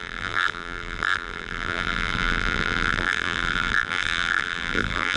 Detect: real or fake fake